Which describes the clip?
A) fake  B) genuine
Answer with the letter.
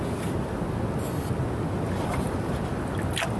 B